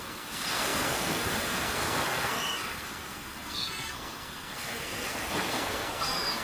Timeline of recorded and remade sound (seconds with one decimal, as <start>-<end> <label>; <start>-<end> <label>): 0.0-6.4 remade